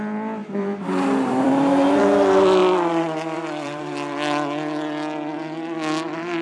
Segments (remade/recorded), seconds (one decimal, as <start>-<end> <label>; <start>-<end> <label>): 0.0-0.4 recorded; 0.4-2.0 remade; 2.0-2.6 recorded; 2.6-3.8 remade; 3.8-6.4 recorded